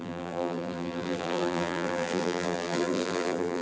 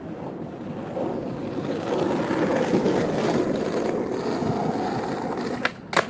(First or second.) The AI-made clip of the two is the first